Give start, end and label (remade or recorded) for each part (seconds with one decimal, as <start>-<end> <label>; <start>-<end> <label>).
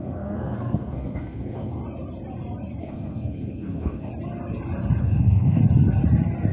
0.0-1.8 remade; 1.8-2.8 recorded; 2.8-4.1 remade; 4.1-5.0 recorded; 5.0-5.6 remade; 5.6-6.5 recorded